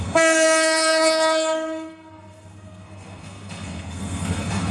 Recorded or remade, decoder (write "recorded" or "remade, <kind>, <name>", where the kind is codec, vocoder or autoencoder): remade, codec, SNAC